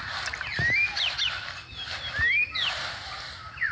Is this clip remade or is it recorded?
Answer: recorded